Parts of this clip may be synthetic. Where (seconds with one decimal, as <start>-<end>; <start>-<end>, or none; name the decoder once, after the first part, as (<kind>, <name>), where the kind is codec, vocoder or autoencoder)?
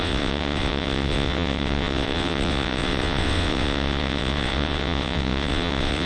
0.0-6.1 (vocoder, WaveNeXt)